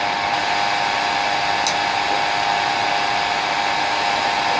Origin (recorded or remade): recorded